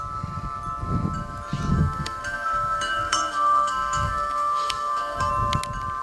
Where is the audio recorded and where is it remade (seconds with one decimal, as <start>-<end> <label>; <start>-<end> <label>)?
0.0-1.7 recorded; 1.7-5.3 remade; 5.3-6.0 recorded